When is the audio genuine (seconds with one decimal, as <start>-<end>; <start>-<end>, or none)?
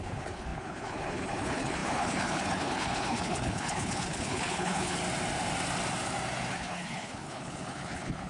5.0-6.5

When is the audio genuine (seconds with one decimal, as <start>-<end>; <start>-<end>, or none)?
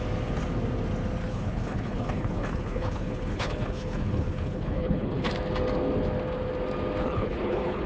0.0-1.2; 5.3-7.0